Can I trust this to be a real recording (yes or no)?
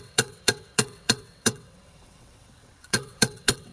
no